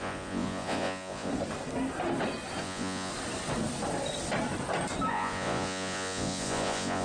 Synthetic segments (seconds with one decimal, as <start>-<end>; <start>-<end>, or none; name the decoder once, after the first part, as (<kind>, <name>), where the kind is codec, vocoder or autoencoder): 0.0-1.3 (vocoder, Vocos); 2.6-3.1; 5.1-7.0